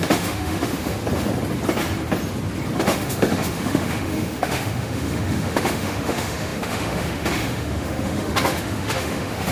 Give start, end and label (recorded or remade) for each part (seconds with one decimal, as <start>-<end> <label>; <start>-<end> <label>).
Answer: 0.0-1.0 remade; 1.0-2.8 recorded; 2.8-9.5 remade